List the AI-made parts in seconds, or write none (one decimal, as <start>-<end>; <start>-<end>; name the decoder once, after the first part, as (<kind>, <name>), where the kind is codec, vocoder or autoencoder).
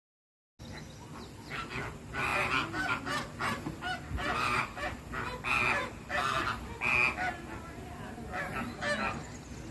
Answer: none